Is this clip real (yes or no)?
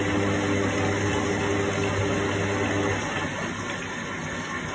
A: yes